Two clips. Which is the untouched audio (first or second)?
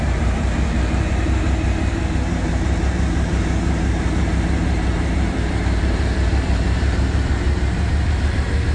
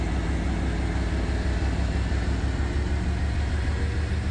second